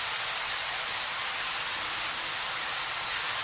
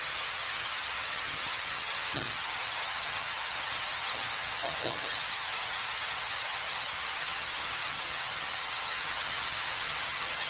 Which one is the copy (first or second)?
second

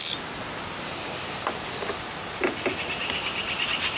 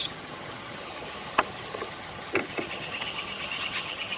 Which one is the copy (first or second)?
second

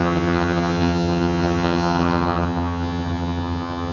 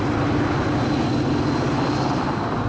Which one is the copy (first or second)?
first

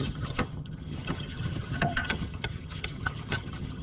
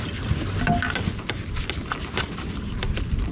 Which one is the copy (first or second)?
first